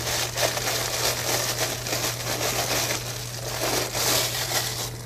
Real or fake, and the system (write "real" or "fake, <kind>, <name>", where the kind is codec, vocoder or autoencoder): real